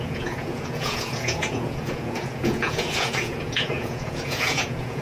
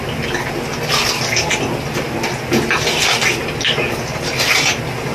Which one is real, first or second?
second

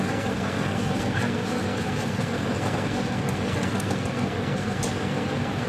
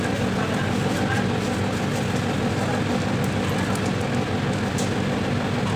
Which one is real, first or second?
second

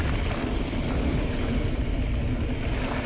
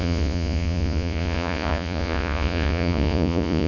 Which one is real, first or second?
first